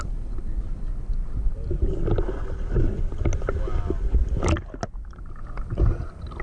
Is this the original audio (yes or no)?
yes